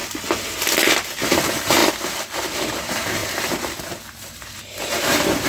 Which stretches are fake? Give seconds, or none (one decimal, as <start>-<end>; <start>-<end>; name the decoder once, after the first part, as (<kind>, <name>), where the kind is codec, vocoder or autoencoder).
1.2-1.8 (vocoder, BigVGAN v2); 2.8-5.5